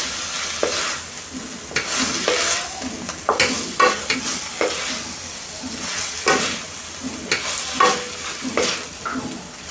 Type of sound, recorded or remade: recorded